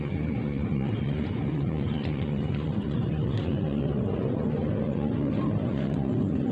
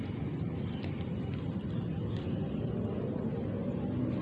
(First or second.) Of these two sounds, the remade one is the first